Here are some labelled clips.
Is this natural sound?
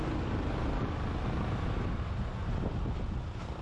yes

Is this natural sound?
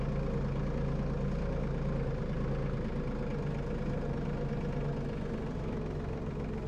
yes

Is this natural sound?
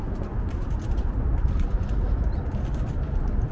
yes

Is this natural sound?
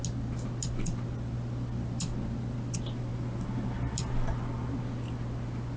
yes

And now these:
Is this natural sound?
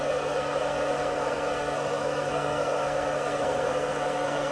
no